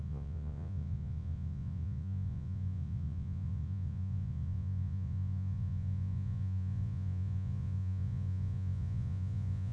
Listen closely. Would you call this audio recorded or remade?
remade